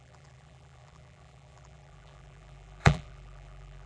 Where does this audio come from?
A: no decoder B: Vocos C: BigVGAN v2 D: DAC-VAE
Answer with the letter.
C